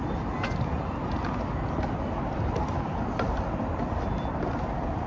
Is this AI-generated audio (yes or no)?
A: no